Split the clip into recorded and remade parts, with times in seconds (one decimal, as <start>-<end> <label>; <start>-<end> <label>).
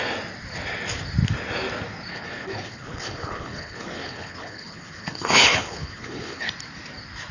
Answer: 0.0-2.1 recorded; 2.1-6.5 remade; 6.5-7.3 recorded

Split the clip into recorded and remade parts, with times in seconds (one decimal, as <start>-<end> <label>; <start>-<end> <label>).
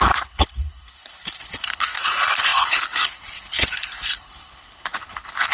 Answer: 0.0-5.5 remade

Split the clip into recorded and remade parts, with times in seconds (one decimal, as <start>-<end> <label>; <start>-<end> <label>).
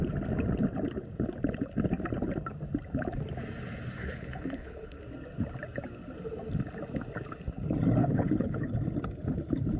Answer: 0.0-4.0 recorded; 4.0-5.0 remade; 5.0-8.0 recorded; 8.0-8.7 remade; 8.7-9.8 recorded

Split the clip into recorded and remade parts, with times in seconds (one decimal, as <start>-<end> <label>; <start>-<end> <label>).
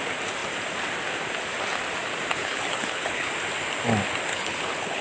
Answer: 0.0-2.3 recorded; 2.3-3.3 remade; 3.3-4.3 recorded; 4.3-5.0 remade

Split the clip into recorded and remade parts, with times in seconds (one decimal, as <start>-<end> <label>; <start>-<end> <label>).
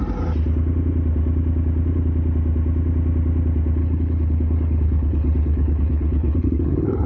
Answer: 0.0-3.8 recorded; 3.8-7.1 remade